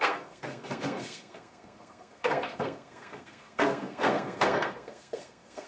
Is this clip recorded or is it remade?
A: remade